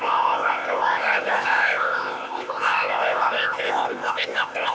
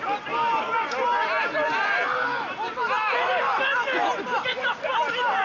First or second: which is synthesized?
first